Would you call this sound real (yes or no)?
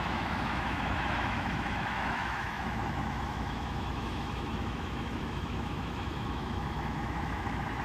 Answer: no